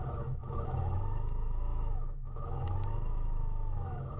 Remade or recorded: remade